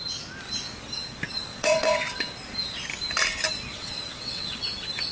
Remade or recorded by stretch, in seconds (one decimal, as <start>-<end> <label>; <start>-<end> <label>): 0.0-1.5 recorded; 1.5-2.2 remade; 2.2-3.7 recorded; 3.7-4.6 remade; 4.6-5.1 recorded